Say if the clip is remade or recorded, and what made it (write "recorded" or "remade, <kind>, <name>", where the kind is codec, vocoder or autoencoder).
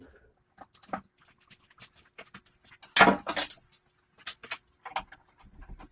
recorded